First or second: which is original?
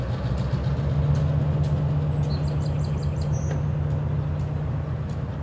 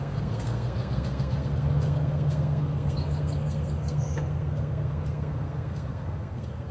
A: first